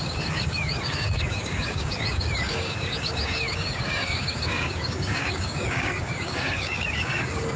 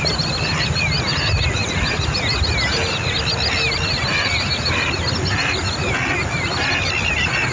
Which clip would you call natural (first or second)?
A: second